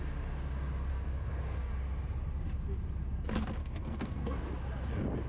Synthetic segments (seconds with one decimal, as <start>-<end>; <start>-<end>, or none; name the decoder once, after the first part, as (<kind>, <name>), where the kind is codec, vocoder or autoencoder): 0.9-1.7 (codec, SNAC); 3.6-4.4